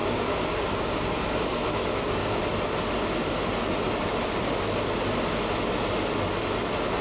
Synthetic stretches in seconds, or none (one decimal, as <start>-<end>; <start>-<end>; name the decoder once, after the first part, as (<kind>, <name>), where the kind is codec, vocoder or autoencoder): 0.0-2.4 (codec, DAC)